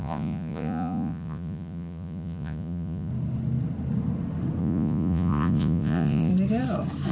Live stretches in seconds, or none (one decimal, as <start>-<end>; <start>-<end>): 3.1-4.6; 6.3-7.1